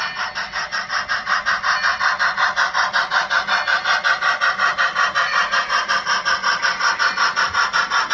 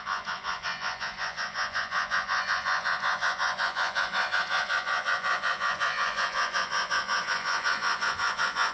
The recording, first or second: first